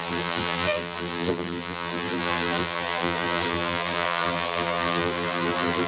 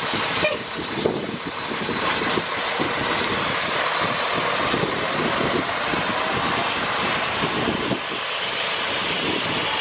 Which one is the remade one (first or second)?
first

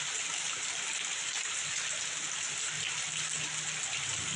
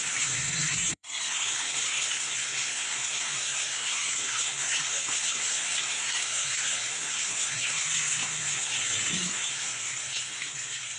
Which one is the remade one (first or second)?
second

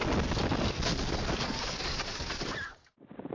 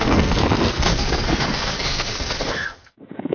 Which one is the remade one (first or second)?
second